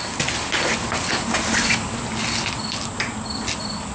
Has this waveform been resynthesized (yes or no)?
no